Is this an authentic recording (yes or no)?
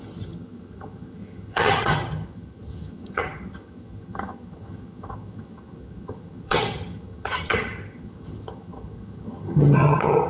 no